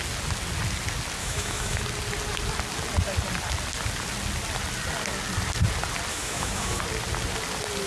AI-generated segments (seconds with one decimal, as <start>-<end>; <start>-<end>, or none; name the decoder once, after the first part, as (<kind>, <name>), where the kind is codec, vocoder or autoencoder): 1.2-1.8 (autoencoder, DAC-VAE); 6.1-6.8